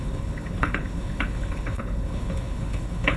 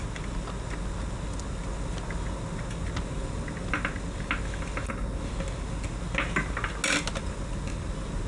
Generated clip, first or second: first